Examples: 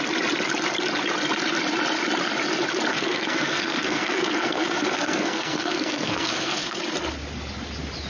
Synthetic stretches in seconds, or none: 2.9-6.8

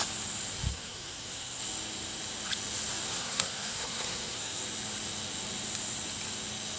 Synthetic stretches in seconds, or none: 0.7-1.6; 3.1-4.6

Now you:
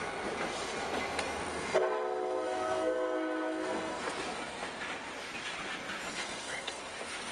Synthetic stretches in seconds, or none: 1.5-4.0; 6.2-6.8

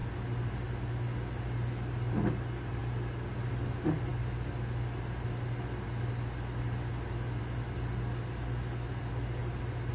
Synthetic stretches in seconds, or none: none